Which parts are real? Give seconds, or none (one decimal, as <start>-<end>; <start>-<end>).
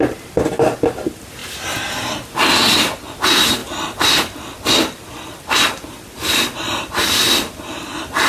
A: 0.0-8.3